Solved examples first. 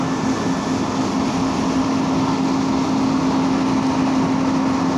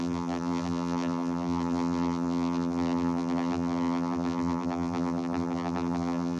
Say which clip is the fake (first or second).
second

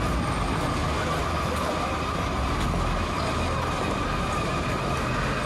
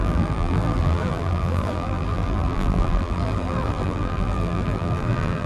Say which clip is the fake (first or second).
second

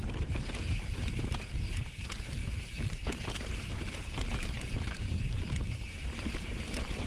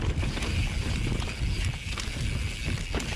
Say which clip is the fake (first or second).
first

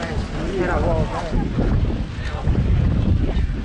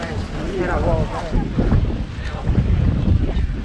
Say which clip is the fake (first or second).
second